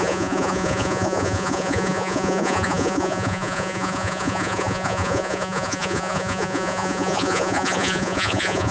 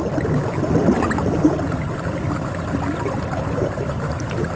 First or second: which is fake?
first